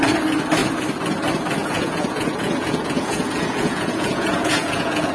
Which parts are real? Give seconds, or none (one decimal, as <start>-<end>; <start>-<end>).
0.0-1.6